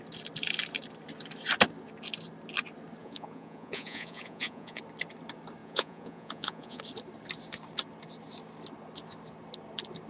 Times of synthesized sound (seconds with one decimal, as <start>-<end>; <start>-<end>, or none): 3.0-4.8; 5.6-6.8